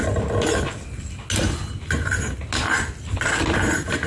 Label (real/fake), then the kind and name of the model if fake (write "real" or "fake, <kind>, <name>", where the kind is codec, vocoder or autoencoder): real